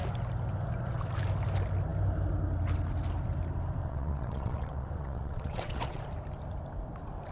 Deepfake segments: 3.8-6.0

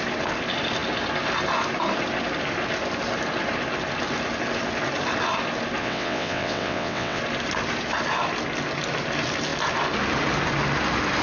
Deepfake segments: 5.8-7.2

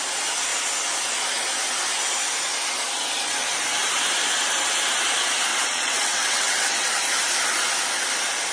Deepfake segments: 5.5-6.9

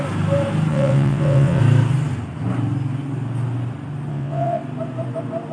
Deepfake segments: 0.7-1.6; 4.1-4.6

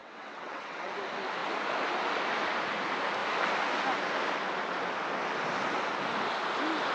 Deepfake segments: 0.0-0.9

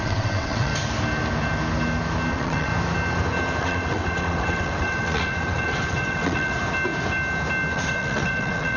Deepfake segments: 0.0-0.7; 2.3-2.7; 3.6-6.6; 7.7-8.8

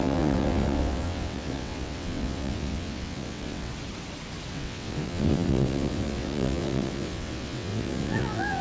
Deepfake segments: 0.0-3.7; 4.5-8.6

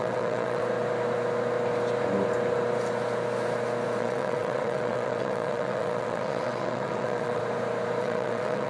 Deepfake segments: 0.0-0.6; 4.0-7.4; 8.0-8.7